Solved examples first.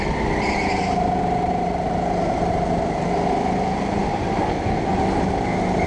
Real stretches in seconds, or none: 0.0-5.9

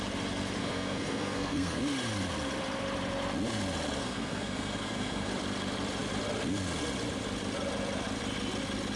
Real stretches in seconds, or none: 0.0-0.6; 1.8-4.0; 5.3-9.0

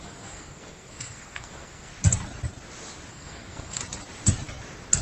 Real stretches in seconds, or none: 1.9-3.1; 3.8-5.0

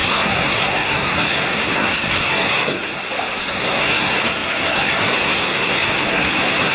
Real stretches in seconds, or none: 3.0-3.5

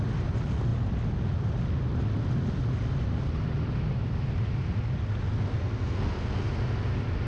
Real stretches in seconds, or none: 0.0-5.5; 6.4-7.3

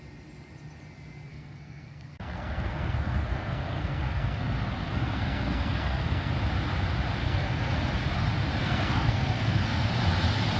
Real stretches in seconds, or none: 0.0-1.3; 6.3-7.2; 7.9-8.6; 9.9-10.6

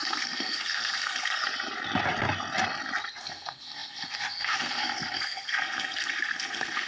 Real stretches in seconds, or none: 1.4-3.2